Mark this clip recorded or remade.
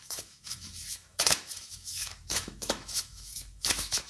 remade